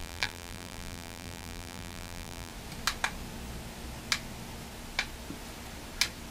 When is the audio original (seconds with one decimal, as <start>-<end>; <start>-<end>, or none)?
2.5-6.3